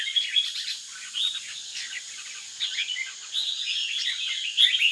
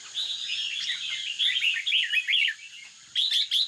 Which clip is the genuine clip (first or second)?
second